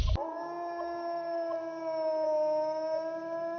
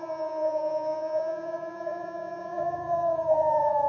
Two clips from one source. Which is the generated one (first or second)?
second